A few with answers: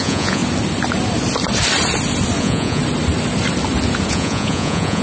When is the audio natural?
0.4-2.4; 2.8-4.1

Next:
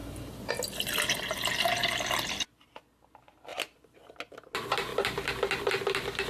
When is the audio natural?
0.0-6.3

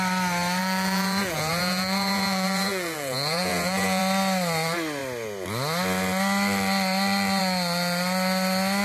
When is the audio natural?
0.0-0.6; 4.0-8.8

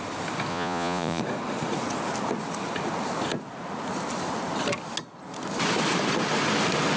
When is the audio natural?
0.0-0.5; 1.2-7.0

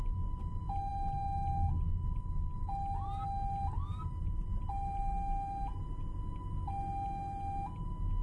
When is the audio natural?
0.0-8.2

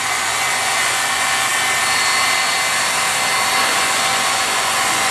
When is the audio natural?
1.5-3.6

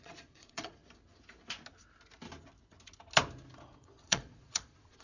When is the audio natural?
0.8-3.8

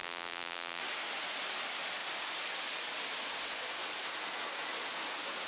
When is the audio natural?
0.8-5.5